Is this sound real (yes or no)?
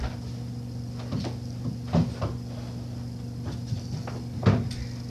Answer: yes